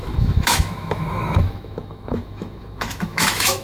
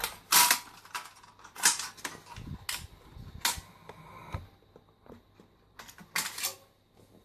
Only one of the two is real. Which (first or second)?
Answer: second